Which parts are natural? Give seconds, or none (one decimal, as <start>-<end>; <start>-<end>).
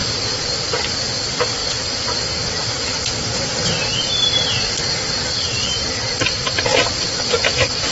0.0-7.9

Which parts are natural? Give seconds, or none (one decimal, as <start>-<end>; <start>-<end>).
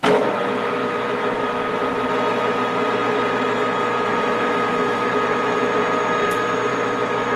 1.7-4.1; 5.1-6.7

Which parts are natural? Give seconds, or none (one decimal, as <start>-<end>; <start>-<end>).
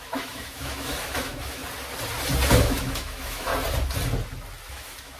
1.6-2.5; 3.5-4.7